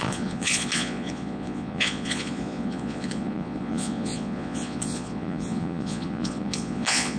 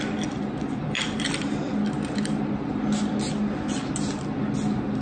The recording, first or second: second